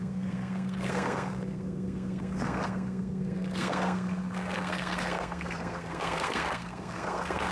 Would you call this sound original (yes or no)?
no